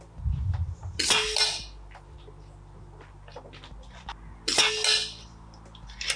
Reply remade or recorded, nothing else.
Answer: recorded